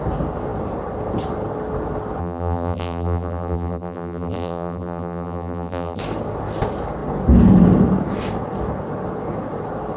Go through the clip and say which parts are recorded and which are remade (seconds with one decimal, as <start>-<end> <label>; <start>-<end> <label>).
0.0-2.2 recorded; 2.2-6.0 remade; 6.0-10.0 recorded